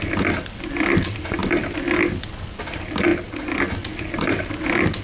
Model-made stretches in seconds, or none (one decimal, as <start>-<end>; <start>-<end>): none